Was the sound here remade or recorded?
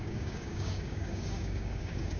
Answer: remade